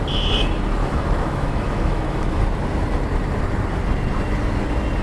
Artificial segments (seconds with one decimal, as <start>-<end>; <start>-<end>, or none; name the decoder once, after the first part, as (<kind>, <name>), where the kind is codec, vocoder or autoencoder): 0.8-2.4 (autoencoder, DAC-VAE)